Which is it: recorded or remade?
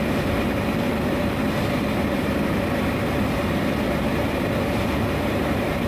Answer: remade